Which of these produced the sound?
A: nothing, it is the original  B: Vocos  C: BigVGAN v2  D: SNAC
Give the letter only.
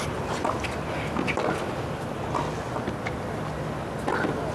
A